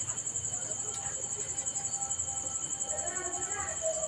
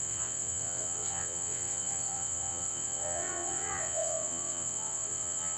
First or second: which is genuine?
first